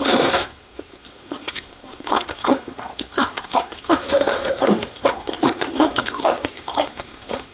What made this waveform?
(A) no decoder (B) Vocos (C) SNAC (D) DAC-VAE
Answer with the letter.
C